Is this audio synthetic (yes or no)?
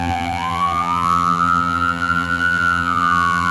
yes